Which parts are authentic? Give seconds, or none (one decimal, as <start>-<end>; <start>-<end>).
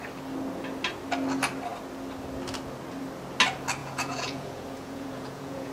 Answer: 0.0-3.8